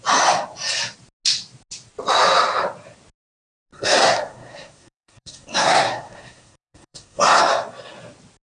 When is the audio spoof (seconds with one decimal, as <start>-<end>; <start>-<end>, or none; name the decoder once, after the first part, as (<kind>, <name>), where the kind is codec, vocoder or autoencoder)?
3.7-7.4 (codec, SNAC)